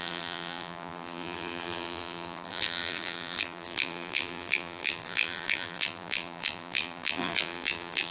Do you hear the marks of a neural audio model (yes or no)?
yes